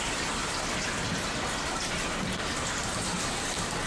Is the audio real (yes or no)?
yes